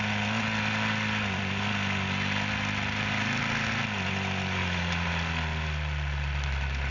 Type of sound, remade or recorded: recorded